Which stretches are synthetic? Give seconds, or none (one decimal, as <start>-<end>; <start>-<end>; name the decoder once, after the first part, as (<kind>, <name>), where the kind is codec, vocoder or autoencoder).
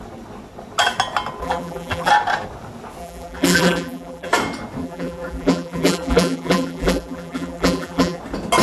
1.4-2.1 (vocoder, BigVGAN v2); 3.0-4.3; 4.8-8.2